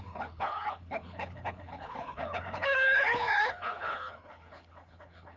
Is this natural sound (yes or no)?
no